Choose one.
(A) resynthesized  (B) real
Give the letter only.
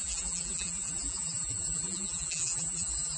A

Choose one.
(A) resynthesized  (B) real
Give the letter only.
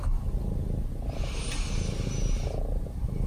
B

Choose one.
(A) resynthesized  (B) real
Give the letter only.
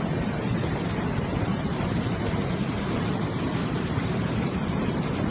A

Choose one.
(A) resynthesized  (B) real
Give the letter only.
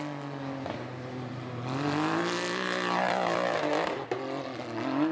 B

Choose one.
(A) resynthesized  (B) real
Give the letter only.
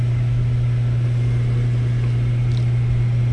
B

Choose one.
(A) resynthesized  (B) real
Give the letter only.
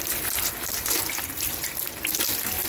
A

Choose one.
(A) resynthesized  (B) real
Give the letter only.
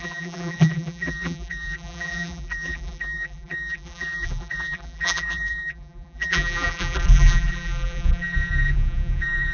A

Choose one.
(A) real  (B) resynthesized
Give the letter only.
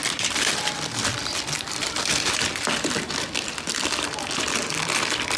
B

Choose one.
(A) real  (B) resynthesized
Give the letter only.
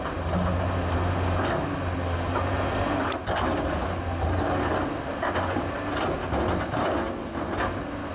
A